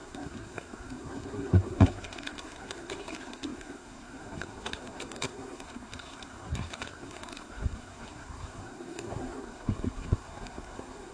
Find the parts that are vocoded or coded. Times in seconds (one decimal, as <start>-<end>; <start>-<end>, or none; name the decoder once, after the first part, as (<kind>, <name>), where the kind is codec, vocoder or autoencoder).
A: 0.0-11.1 (codec, SNAC)